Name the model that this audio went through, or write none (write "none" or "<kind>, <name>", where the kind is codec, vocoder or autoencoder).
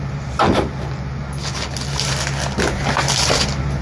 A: none